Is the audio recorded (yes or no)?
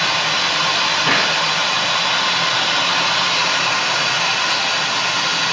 yes